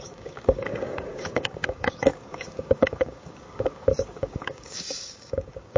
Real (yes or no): no